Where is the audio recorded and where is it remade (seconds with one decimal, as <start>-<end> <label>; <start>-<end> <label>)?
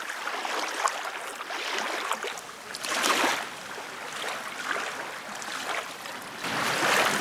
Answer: 0.0-7.2 recorded